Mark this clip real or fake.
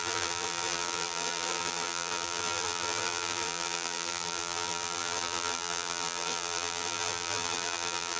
fake